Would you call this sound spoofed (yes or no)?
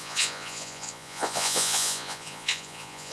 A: yes